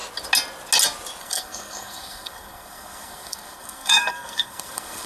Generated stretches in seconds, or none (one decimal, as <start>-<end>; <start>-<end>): 1.2-5.1